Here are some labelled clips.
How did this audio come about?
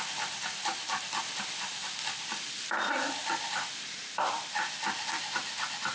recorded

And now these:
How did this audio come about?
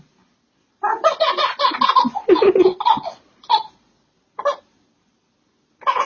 recorded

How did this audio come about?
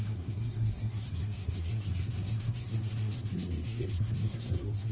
remade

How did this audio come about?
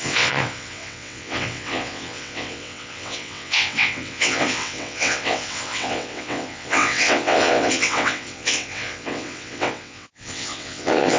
remade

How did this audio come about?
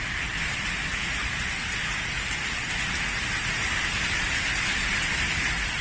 recorded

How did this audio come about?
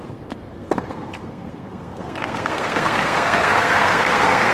remade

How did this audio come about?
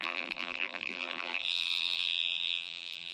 remade